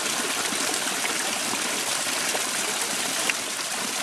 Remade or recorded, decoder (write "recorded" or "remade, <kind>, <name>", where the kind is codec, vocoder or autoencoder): recorded